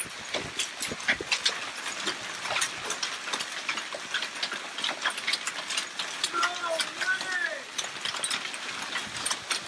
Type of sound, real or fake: real